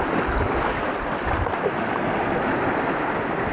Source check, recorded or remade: recorded